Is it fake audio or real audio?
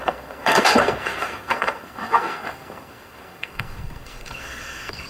fake